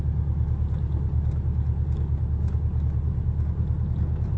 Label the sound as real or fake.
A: real